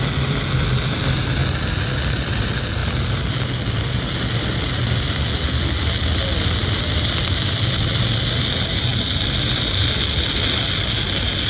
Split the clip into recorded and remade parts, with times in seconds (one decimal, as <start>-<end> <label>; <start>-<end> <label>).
0.0-11.5 recorded